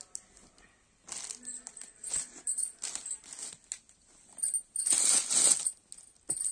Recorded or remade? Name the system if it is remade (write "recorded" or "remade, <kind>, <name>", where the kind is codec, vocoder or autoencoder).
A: recorded